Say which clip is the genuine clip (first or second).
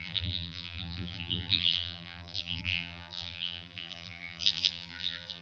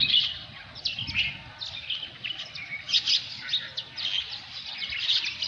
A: second